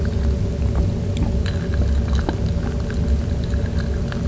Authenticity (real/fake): real